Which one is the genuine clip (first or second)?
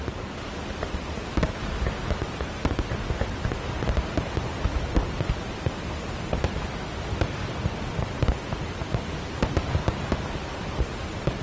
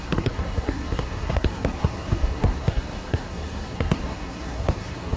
first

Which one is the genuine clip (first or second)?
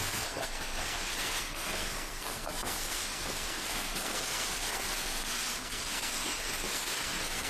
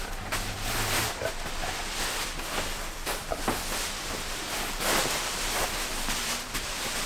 second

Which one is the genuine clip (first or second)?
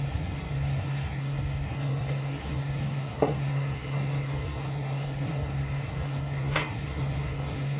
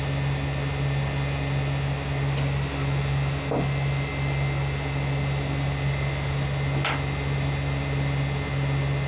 second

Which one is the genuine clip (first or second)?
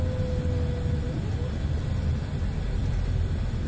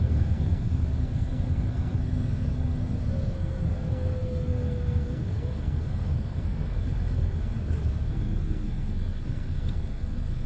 first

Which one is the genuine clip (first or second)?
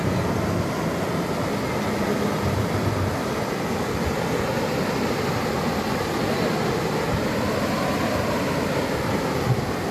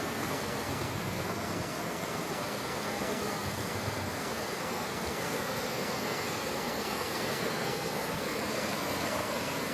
first